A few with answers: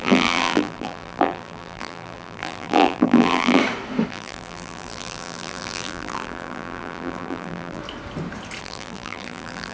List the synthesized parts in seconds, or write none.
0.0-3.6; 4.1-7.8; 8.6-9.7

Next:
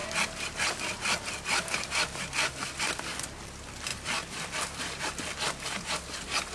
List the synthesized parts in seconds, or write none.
3.9-5.1